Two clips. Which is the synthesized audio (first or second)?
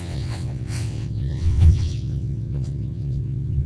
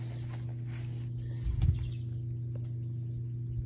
first